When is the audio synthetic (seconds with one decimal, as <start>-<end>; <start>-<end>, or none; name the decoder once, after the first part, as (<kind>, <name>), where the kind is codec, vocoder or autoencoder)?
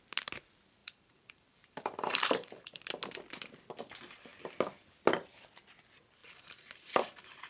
0.8-2.8 (vocoder, BigVGAN v2); 6.2-7.5